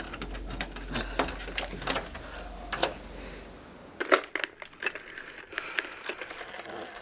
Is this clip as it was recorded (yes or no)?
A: yes